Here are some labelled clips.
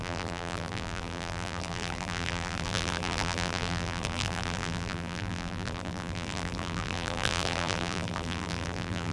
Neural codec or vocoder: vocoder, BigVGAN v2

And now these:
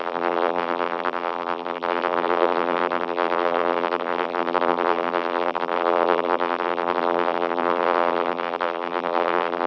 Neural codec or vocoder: vocoder, BigVGAN v2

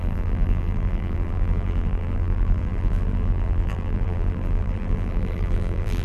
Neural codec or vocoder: vocoder, BigVGAN v2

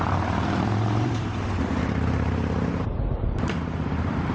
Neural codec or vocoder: vocoder, BigVGAN v2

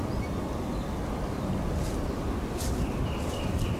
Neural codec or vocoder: none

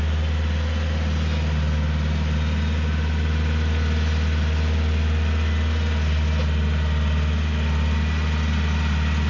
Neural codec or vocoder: none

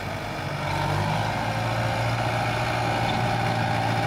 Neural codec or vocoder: none